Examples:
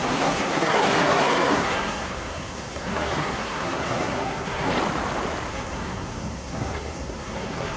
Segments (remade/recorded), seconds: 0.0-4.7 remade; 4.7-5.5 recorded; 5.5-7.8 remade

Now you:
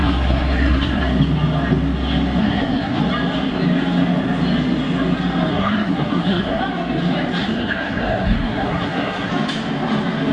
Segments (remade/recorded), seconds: 0.0-1.0 remade; 1.0-2.4 recorded; 2.4-3.0 remade; 3.0-5.5 recorded; 5.5-6.6 remade; 6.6-7.4 recorded; 7.4-9.3 remade; 9.3-10.3 recorded

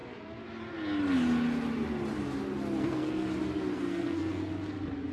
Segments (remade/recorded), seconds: 0.0-2.8 recorded; 2.8-3.3 remade; 3.3-3.7 recorded; 3.7-4.5 remade; 4.5-5.1 recorded

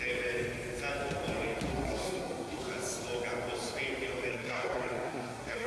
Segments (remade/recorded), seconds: 0.0-1.7 recorded; 1.7-2.6 remade; 2.6-4.3 recorded; 4.3-5.7 remade